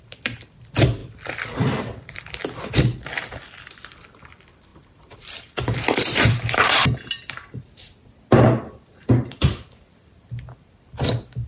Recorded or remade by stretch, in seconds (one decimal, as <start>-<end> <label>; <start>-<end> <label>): 0.0-11.5 remade